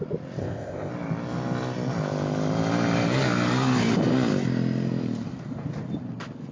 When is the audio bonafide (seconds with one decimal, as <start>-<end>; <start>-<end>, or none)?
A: 0.0-0.4; 0.9-6.5